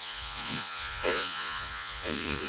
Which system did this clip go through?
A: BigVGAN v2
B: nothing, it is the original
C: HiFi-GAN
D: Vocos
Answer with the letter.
D